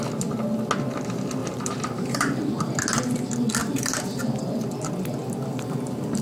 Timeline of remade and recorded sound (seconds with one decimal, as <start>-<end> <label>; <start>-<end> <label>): 0.0-1.4 recorded; 1.4-2.6 remade; 2.6-3.6 recorded; 3.6-4.2 remade; 4.2-5.2 recorded; 5.2-6.2 remade